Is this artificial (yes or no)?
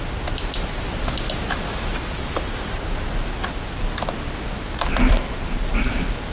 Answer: no